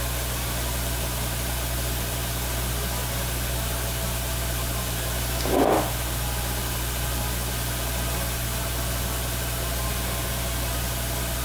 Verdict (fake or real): real